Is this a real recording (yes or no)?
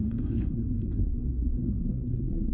no